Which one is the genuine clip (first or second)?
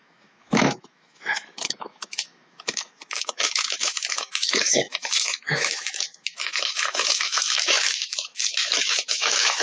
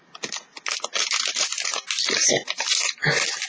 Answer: second